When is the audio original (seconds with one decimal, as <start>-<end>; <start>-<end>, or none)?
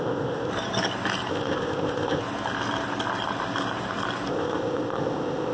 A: 0.5-1.3; 2.2-4.3